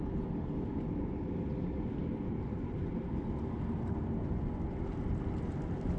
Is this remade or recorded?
recorded